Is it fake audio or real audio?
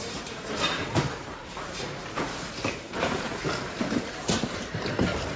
fake